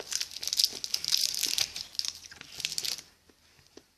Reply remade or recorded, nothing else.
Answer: recorded